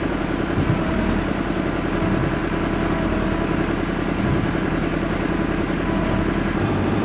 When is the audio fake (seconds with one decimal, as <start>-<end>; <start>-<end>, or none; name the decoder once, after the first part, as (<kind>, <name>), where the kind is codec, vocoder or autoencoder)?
0.0-2.4 (vocoder, BigVGAN v2); 4.2-7.0